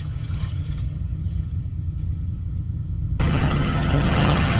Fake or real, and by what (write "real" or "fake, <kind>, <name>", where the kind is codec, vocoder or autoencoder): fake, vocoder, HiFi-GAN